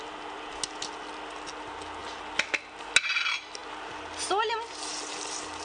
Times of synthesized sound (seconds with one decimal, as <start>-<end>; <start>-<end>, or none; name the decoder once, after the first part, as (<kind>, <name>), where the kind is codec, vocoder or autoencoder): none